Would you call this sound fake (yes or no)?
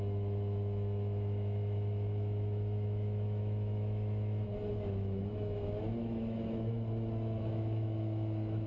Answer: yes